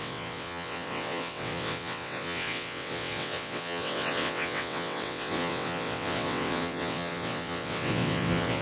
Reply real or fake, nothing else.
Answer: fake